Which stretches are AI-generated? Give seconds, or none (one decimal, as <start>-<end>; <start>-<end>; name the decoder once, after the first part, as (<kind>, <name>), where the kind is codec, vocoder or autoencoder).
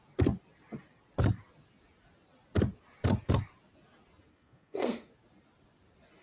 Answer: 4.3-5.1 (codec, SNAC)